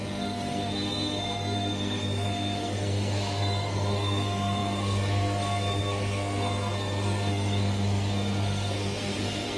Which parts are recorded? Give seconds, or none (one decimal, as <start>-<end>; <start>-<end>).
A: none

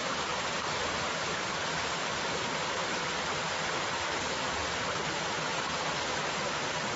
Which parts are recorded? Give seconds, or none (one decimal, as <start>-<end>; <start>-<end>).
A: none